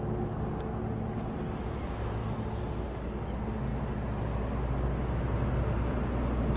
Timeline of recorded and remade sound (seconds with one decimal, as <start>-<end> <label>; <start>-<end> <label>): 0.0-6.6 recorded